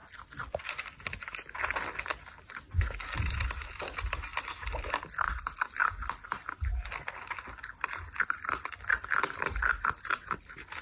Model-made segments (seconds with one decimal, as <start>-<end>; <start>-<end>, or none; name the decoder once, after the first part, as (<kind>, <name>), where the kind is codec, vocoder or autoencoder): 0.0-0.9 (vocoder, BigVGAN v2); 4.3-4.9